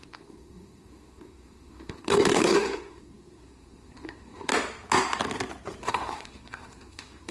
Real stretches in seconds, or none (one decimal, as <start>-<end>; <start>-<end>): 4.5-5.8